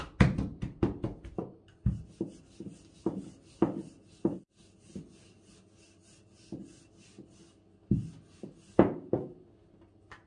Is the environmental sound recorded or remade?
recorded